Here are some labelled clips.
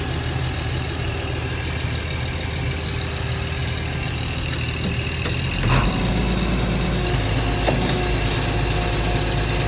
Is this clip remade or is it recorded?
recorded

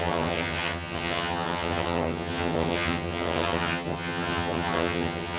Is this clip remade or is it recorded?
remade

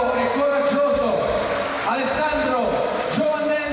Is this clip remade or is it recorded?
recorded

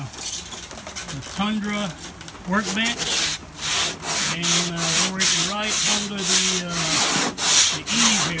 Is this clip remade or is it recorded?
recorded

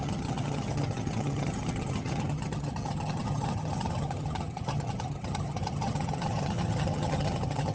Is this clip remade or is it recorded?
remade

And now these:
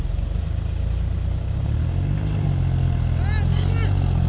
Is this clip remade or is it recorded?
recorded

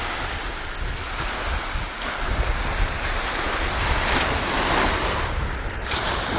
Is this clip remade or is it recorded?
recorded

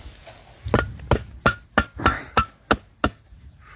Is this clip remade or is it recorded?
recorded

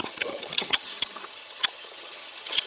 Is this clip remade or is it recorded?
remade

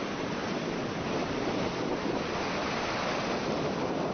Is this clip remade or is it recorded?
recorded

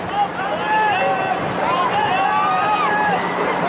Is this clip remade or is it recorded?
recorded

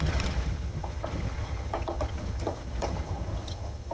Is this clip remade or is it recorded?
remade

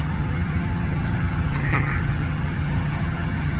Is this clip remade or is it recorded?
remade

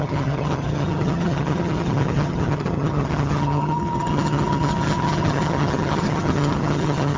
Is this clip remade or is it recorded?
remade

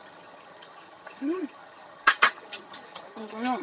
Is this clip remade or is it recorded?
remade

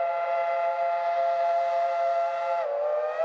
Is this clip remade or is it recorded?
recorded